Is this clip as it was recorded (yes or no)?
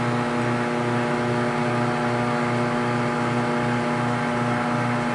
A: yes